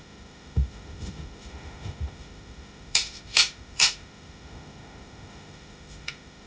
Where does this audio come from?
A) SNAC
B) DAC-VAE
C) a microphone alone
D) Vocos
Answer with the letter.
B